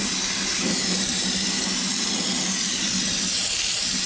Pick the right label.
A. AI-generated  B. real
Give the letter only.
B